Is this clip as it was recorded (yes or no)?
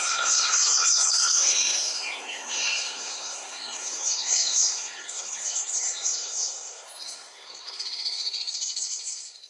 no